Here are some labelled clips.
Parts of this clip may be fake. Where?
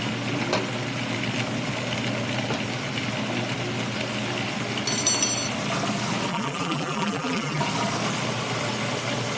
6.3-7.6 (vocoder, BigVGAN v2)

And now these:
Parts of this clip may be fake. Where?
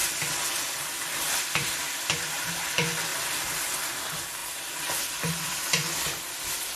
0.0-6.8 (vocoder, BigVGAN v2)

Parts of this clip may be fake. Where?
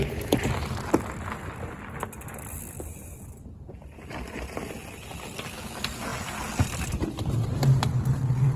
none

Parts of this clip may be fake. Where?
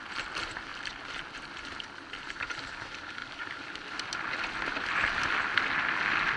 none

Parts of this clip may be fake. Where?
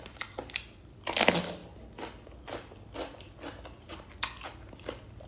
none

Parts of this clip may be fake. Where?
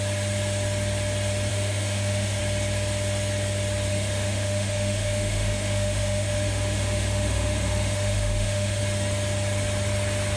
1.5-2.4 (autoencoder, DAC-VAE); 3.9-8.8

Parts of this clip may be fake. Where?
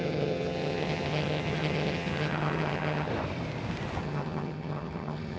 0.0-3.1 (vocoder, HiFi-GAN); 4.0-5.4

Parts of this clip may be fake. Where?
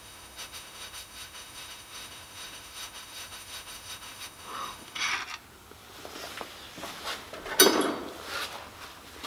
0.0-5.1 (autoencoder, DAC-VAE)